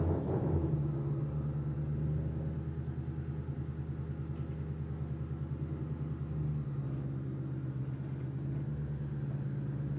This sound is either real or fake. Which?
real